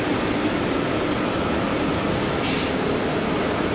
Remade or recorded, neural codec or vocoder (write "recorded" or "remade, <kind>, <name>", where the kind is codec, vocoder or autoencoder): recorded